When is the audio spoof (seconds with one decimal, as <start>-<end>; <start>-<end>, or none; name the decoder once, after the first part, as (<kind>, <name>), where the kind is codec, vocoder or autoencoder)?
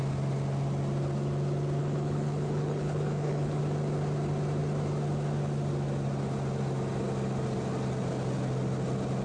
1.8-3.6 (codec, HILCodec)